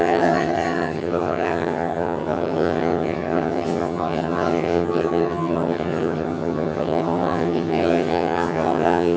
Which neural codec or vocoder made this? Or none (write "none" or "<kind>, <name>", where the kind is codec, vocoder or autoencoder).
vocoder, HiFi-GAN